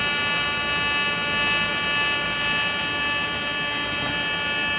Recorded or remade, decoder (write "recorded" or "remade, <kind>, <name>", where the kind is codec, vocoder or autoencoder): recorded